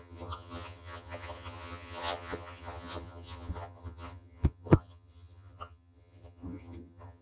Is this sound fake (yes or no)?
yes